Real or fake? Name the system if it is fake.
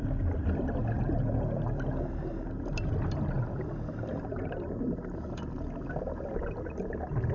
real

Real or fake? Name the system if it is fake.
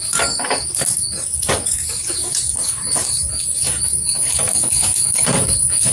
fake, codec, DAC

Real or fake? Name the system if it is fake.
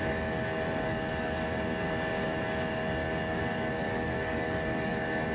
fake, codec, DAC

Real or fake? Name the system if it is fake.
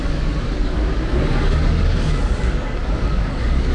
fake, codec, DAC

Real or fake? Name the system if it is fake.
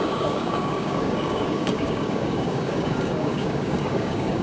fake, codec, DAC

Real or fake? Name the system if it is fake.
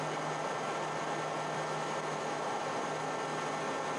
real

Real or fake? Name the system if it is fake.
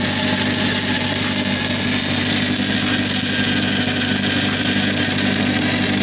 real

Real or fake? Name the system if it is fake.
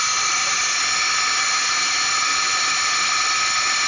real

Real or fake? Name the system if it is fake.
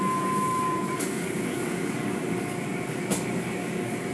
fake, codec, DAC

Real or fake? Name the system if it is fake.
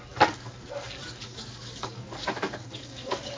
fake, codec, DAC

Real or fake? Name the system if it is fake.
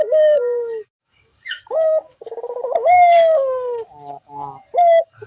fake, codec, DAC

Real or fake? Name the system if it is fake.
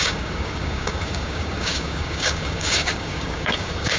fake, codec, DAC